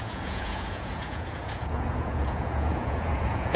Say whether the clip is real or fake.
fake